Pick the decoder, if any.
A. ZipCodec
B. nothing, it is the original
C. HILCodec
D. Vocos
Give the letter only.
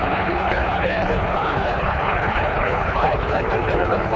C